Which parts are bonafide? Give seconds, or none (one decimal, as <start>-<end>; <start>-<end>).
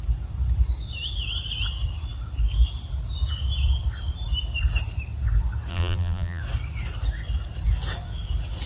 0.0-5.7; 6.4-8.7